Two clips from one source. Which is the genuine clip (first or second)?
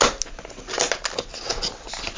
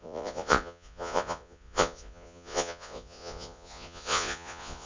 first